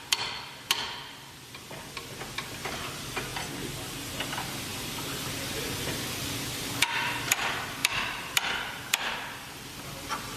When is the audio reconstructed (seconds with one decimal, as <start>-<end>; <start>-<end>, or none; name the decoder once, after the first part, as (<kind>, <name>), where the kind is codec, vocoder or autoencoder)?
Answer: 3.3-3.9 (vocoder, BigVGAN v2); 7.8-9.8